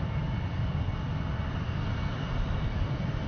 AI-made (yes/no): no